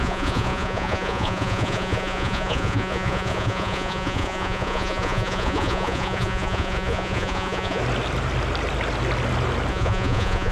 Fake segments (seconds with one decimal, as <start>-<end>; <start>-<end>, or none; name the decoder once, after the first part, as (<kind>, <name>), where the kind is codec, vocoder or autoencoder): 0.0-7.8 (vocoder, Vocos); 9.7-10.5